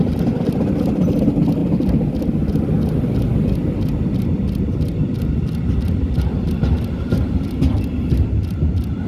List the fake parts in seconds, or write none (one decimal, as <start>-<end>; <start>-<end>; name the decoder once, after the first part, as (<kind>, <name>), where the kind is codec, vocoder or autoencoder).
none

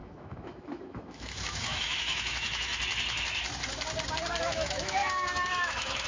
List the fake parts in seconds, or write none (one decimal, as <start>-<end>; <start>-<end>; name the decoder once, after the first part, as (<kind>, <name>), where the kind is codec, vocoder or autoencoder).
0.0-2.7 (autoencoder, DAC-VAE); 4.4-6.1